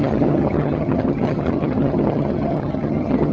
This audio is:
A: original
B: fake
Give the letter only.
B